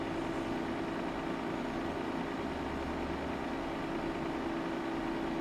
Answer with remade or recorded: recorded